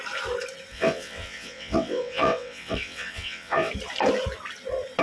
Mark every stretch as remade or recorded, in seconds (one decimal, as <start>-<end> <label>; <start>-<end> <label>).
0.0-0.7 recorded; 0.7-3.7 remade; 3.7-5.0 recorded